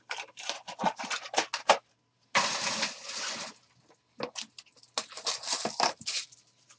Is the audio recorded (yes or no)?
yes